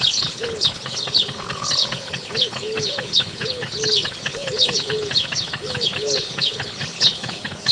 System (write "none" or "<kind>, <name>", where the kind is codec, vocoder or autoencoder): codec, HILCodec